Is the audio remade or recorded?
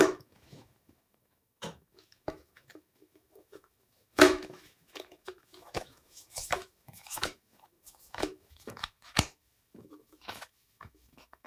remade